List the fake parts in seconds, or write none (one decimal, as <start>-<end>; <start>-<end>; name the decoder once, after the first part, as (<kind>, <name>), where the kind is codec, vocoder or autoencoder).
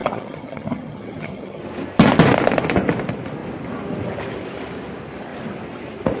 0.0-1.6 (vocoder, HiFi-GAN)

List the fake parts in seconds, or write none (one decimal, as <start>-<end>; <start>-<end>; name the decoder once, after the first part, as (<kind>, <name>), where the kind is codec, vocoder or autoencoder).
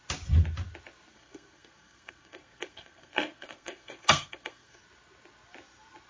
1.1-4.8 (codec, SNAC)